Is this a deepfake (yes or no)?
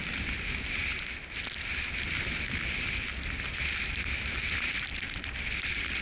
no